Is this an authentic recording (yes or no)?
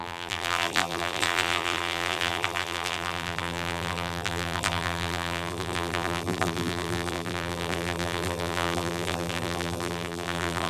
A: no